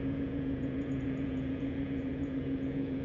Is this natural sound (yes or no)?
no